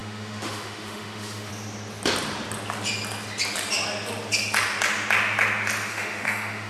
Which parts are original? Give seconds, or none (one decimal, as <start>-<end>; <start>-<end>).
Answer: 1.5-5.9